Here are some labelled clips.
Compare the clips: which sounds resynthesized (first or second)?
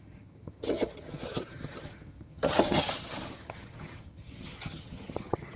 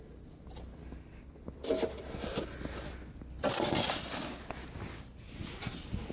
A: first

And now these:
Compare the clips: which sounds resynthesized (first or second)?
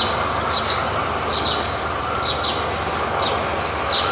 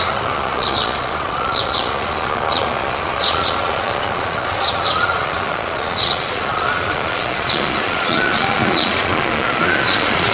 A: second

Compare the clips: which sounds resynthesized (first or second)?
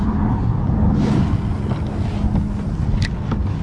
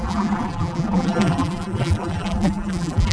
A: second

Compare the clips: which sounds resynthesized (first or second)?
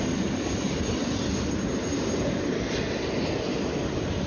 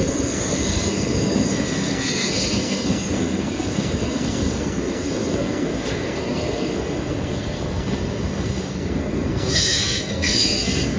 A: second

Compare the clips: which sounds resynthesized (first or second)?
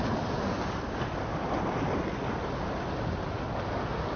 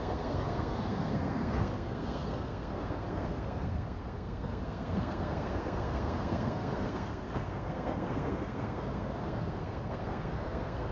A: second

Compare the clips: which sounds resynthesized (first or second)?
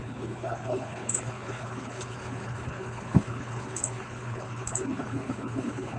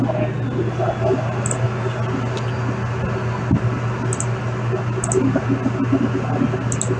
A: first